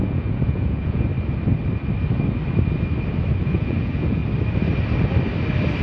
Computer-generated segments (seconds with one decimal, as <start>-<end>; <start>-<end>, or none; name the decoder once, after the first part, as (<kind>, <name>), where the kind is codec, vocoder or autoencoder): 0.0-1.1 (vocoder, Vocos); 3.4-4.2